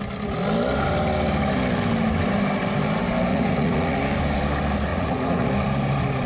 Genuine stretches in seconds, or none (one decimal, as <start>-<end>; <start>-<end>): 0.0-3.3; 4.0-4.9; 5.5-6.3